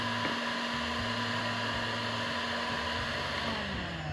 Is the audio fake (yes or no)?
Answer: no